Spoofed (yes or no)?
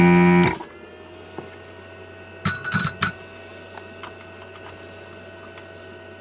no